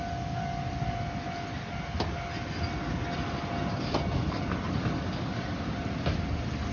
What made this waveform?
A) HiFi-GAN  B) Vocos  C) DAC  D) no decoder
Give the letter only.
D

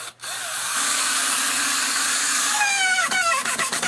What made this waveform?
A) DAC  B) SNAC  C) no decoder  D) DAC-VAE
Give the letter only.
A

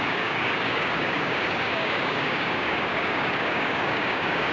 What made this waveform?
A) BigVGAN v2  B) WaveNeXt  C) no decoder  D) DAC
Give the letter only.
D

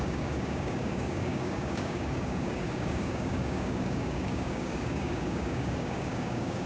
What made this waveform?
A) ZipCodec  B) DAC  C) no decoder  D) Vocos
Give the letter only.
B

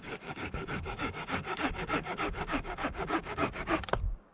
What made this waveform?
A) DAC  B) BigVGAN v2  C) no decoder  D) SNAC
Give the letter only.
A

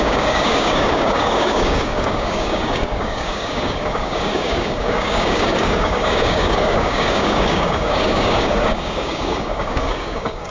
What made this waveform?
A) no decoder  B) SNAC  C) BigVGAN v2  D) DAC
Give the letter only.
D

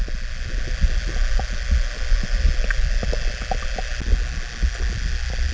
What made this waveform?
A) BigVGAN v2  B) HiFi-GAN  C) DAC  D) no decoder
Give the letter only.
D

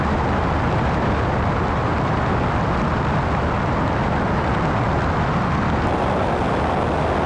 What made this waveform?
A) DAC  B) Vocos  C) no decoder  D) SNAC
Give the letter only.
C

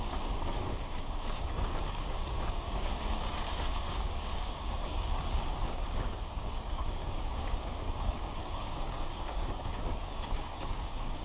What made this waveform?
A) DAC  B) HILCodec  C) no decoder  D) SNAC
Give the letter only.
A